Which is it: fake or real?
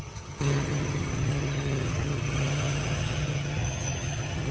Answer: fake